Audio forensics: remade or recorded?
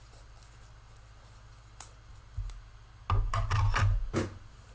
recorded